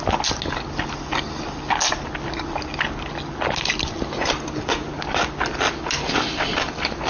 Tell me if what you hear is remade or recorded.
recorded